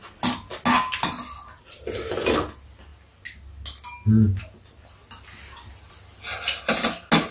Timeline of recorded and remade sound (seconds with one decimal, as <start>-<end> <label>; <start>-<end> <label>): 0.0-7.3 recorded